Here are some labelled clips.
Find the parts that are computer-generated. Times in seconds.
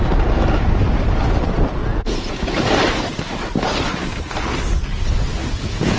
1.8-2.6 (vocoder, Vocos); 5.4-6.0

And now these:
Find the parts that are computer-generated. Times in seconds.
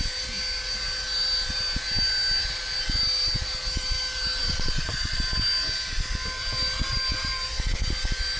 4.4-5.2 (vocoder, Vocos)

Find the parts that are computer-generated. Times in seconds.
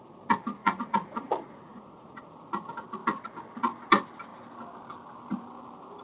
0.6-2.3 (vocoder, Vocos)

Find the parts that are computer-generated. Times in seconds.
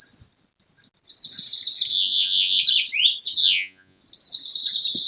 1.9-2.6 (vocoder, Vocos); 3.4-4.0